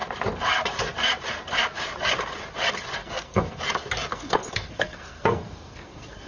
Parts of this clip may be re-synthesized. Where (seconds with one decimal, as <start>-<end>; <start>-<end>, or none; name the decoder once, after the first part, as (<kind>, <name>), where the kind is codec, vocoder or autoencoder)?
3.0-3.6 (codec, SNAC); 4.1-6.3